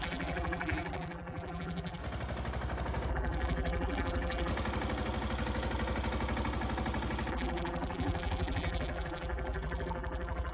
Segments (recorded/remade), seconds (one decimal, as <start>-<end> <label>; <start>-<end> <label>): 0.0-2.0 remade; 2.0-3.1 recorded; 3.1-4.5 remade; 4.5-7.3 recorded; 7.3-10.5 remade